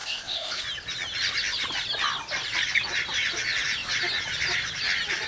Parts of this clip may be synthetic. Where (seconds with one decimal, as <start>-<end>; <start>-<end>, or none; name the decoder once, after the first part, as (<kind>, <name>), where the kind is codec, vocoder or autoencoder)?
0.0-0.6 (codec, ZipCodec)